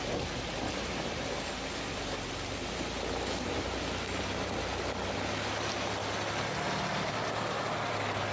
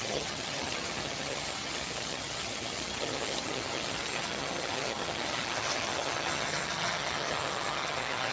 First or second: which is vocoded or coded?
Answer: second